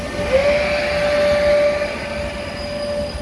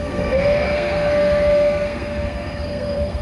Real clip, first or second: first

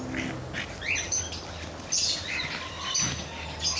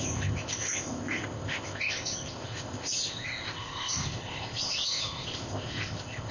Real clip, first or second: first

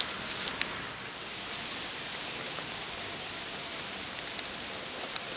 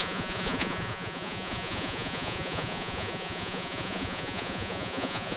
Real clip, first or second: first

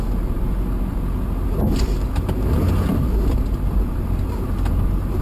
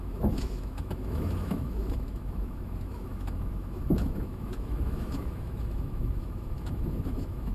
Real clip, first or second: first